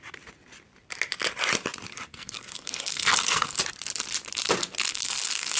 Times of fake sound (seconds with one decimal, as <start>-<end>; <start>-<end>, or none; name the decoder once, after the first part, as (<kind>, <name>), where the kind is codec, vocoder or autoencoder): 2.1-3.6 (codec, SNAC); 4.9-5.6